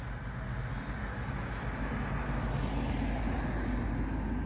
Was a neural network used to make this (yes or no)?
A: no